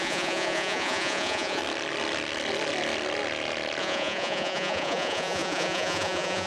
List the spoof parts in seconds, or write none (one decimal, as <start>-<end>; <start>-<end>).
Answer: 0.0-1.6; 3.8-6.5